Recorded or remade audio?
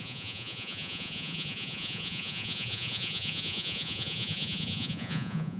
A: remade